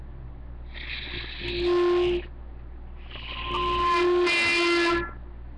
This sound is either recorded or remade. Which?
recorded